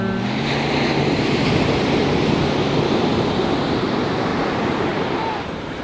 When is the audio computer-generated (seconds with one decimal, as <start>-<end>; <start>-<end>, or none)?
4.3-5.8